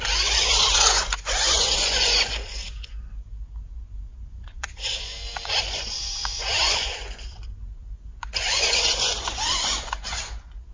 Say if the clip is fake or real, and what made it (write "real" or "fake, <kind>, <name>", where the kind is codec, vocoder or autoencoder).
fake, vocoder, Vocos